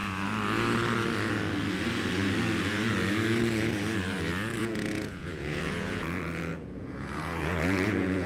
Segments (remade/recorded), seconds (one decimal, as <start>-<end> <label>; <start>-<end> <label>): 0.0-4.6 recorded; 4.6-8.3 remade